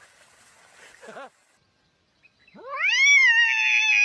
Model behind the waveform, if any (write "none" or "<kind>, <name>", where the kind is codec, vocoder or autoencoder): none